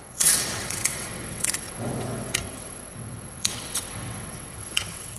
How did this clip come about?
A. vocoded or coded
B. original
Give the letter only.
A